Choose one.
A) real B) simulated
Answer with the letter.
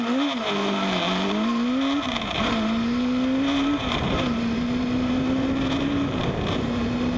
B